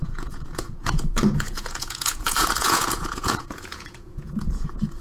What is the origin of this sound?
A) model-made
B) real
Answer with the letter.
A